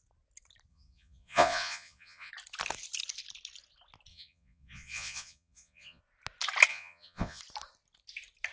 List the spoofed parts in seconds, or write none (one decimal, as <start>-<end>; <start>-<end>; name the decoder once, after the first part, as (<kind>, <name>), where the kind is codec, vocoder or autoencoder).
0.7-2.3 (vocoder, Vocos); 4.1-6.0; 6.7-7.4